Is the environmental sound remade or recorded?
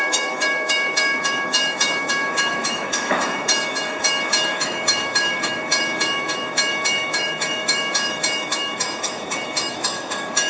remade